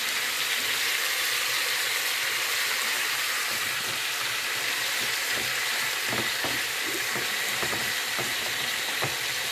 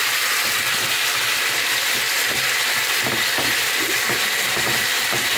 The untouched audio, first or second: second